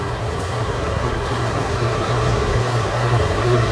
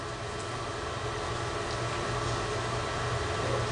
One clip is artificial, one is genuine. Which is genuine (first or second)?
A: second